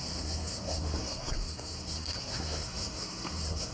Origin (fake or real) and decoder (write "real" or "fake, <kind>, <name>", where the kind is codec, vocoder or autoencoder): fake, codec, SNAC